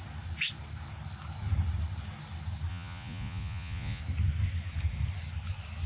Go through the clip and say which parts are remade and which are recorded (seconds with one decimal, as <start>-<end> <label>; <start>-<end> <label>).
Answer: 0.0-2.7 recorded; 2.7-4.0 remade; 4.0-5.9 recorded